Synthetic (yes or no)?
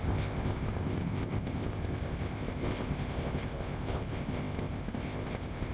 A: yes